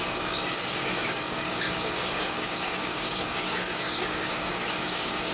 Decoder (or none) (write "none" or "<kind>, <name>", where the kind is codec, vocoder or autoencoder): codec, DAC